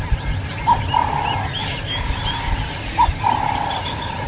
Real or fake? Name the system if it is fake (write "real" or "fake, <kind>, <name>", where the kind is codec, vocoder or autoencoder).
real